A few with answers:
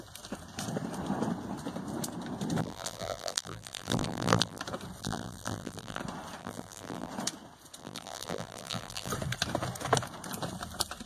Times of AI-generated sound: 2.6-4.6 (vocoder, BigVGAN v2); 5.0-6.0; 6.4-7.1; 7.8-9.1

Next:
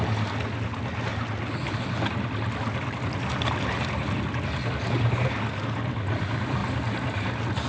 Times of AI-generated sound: none

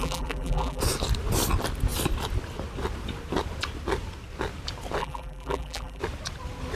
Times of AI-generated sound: 0.0-0.8 (vocoder, BigVGAN v2); 5.0-6.0

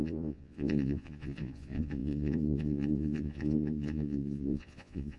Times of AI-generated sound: 0.0-5.2 (vocoder, Vocos)